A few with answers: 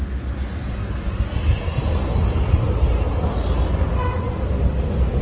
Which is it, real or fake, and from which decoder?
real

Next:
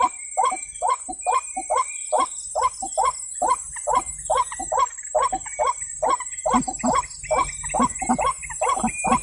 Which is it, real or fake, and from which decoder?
real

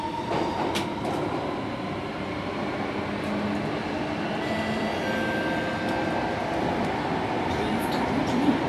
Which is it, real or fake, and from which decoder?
real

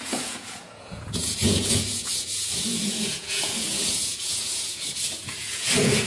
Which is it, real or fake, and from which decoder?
fake, vocoder, Vocos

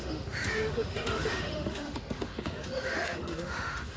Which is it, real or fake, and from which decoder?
fake, autoencoder, DAC-VAE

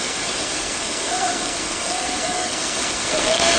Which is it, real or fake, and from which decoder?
fake, codec, SNAC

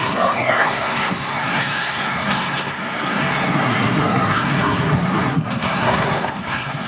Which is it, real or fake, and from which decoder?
fake, codec, SNAC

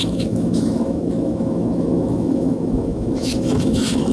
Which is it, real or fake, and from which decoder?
fake, autoencoder, DAC-VAE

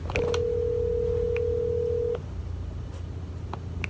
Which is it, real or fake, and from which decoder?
real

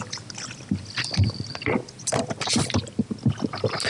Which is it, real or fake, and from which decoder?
real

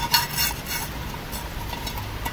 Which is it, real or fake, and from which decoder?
fake, vocoder, BigVGAN v2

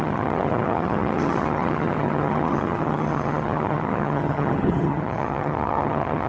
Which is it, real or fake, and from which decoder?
fake, vocoder, HiFi-GAN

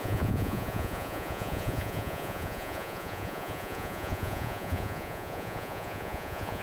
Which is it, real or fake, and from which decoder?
fake, vocoder, Vocos